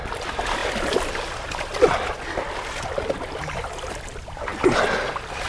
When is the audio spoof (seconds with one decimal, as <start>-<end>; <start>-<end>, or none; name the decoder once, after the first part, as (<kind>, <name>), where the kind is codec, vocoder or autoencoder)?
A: none